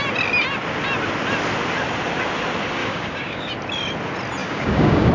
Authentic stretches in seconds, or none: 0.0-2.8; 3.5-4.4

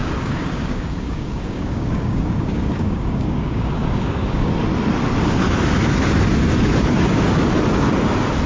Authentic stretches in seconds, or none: 4.5-8.5

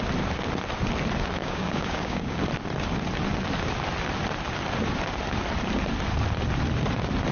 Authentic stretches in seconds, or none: 0.0-1.4; 2.4-7.3

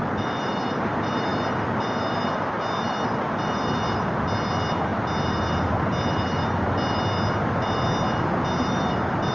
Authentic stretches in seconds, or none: 0.0-9.3

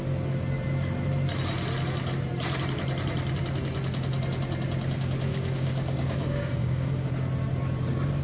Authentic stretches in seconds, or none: 0.0-5.3; 7.1-8.2

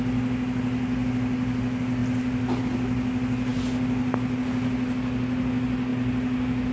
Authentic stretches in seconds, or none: 0.0-6.7

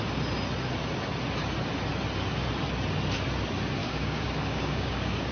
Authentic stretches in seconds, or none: 0.0-3.8

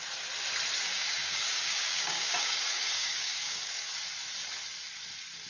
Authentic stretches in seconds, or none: 0.0-0.9; 3.7-5.5